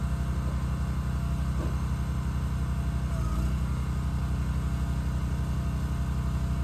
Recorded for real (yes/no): yes